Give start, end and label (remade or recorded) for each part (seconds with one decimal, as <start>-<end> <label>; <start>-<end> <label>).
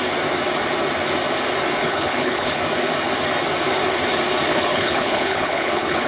0.0-1.8 recorded; 1.8-2.6 remade; 2.6-4.5 recorded; 4.5-6.1 remade